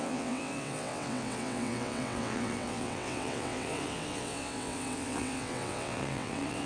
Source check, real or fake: fake